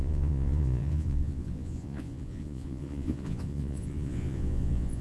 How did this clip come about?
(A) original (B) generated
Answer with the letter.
B